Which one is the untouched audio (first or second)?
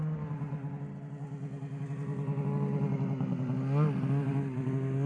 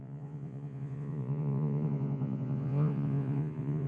first